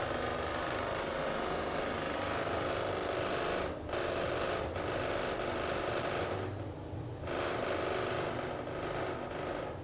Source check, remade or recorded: recorded